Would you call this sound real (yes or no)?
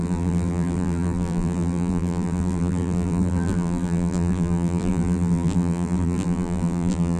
no